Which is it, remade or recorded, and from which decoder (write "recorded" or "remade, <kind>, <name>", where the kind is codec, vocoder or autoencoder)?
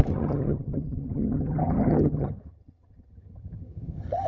remade, vocoder, HiFi-GAN